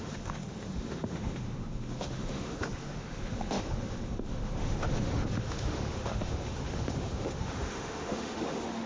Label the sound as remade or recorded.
remade